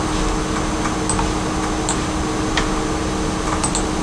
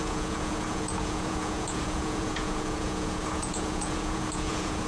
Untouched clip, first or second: first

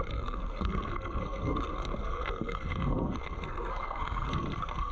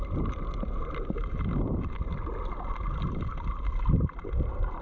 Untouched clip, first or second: second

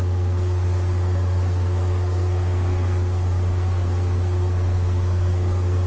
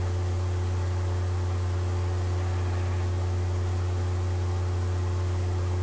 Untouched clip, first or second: second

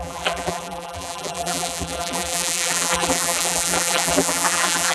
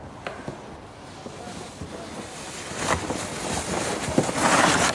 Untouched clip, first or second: second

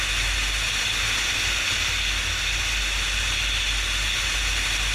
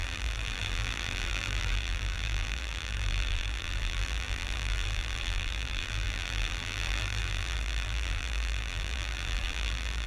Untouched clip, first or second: first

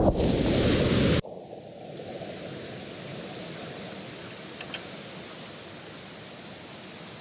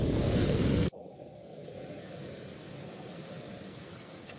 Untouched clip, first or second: first